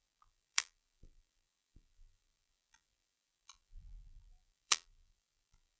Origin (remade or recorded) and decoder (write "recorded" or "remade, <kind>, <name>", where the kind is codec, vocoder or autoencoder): remade, vocoder, BigVGAN v2